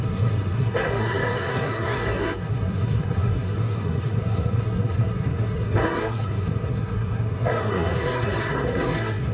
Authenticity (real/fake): fake